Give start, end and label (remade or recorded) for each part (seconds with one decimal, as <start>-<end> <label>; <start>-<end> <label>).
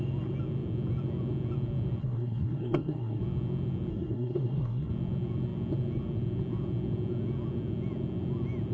0.0-2.0 recorded; 2.0-3.2 remade; 3.2-3.9 recorded; 3.9-4.9 remade; 4.9-8.7 recorded